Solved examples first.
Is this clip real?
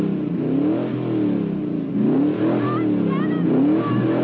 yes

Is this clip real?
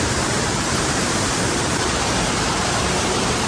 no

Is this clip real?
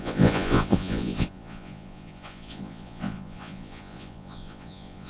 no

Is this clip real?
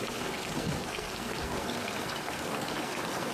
no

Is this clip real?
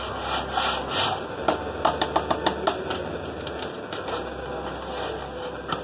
yes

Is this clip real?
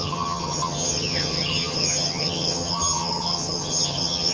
no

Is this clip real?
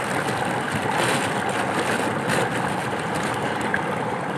yes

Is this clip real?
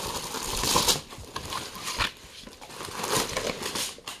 yes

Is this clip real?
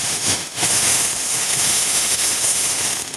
no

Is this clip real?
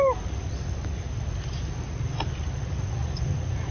yes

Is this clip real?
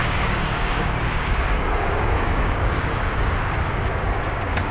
no